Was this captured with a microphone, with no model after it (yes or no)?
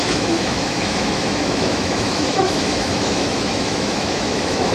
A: no